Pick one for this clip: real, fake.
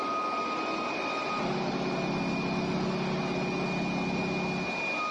real